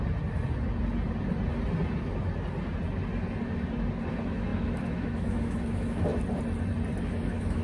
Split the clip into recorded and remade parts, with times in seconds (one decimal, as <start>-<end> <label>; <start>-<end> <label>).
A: 0.0-4.1 recorded; 4.1-6.1 remade; 6.1-7.0 recorded; 7.0-7.6 remade